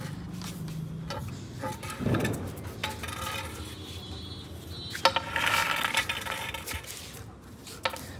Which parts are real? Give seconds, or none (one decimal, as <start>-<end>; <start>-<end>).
0.0-8.2